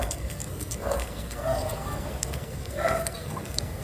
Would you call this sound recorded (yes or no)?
no